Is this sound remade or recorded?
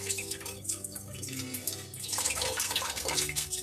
remade